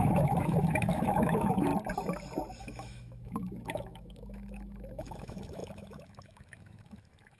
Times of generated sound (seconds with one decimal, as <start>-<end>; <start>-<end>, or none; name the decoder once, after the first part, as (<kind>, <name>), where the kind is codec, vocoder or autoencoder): 0.0-1.7 (autoencoder, DAC-VAE); 2.6-7.4